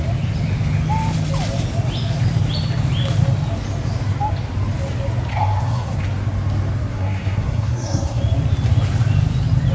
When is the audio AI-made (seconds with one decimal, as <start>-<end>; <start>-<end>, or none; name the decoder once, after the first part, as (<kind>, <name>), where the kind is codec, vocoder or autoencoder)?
5.3-6.0 (codec, SNAC); 6.9-8.2